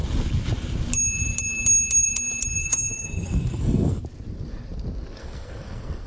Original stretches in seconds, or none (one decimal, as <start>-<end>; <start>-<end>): 0.0-2.6; 4.0-5.2

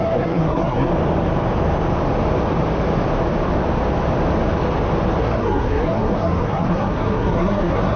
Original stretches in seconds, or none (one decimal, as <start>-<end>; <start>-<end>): 0.9-5.2